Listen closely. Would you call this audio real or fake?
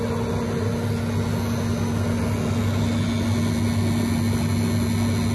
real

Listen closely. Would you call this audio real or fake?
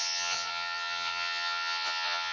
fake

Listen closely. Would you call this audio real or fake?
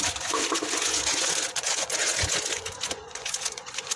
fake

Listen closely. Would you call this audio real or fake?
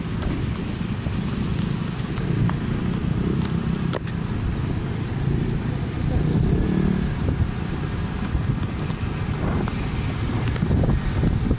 real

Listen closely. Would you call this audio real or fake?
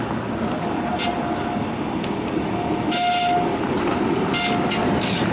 real